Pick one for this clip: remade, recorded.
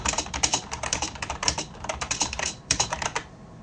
remade